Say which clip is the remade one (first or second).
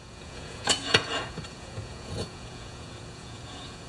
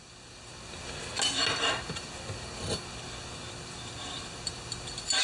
first